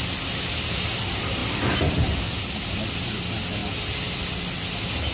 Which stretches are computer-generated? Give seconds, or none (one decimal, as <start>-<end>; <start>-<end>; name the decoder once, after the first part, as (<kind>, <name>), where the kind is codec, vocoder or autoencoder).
none